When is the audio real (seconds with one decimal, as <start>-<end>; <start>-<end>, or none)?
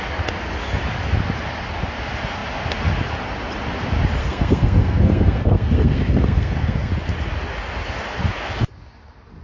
0.0-4.2; 6.9-9.4